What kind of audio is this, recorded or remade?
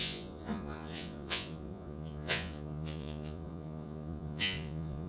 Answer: remade